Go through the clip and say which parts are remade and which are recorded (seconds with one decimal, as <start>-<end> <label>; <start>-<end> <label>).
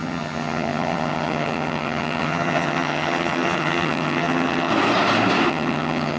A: 0.0-4.7 remade; 4.7-5.5 recorded; 5.5-6.2 remade